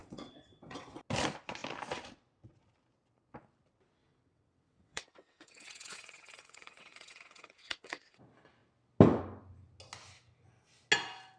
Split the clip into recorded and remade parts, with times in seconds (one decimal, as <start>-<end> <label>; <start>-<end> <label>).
0.0-1.0 remade; 1.0-4.0 recorded; 4.0-8.2 remade; 8.2-11.4 recorded